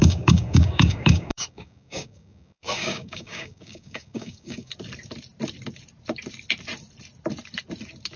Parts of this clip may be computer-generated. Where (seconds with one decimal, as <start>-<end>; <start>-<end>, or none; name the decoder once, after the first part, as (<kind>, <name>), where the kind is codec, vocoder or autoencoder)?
0.0-4.7 (codec, DAC)